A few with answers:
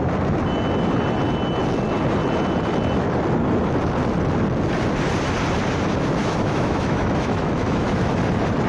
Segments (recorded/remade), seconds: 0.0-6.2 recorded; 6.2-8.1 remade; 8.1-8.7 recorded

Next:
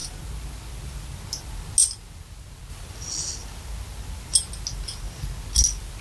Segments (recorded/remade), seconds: 0.0-6.0 recorded

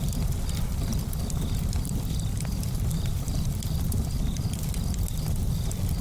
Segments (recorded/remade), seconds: 0.0-6.0 recorded

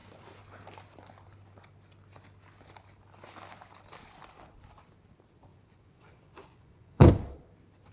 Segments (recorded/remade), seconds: 0.0-5.5 recorded; 5.5-7.1 remade; 7.1-7.9 recorded

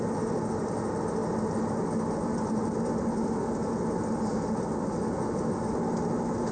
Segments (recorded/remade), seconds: 0.0-6.5 recorded

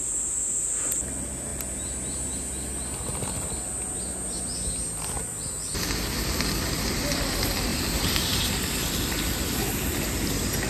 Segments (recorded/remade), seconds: 0.0-7.7 recorded; 7.7-8.9 remade; 8.9-10.7 recorded

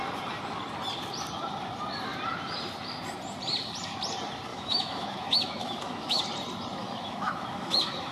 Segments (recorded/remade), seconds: 0.0-4.5 recorded; 4.5-6.2 remade; 6.2-6.8 recorded; 6.8-8.1 remade